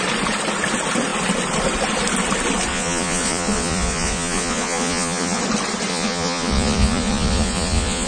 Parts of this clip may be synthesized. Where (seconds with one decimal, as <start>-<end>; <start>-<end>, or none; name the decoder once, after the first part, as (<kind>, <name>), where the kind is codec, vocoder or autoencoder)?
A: 2.7-5.4 (vocoder, Vocos); 5.9-8.1